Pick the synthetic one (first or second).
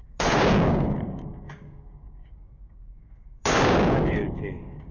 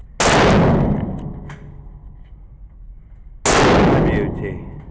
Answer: first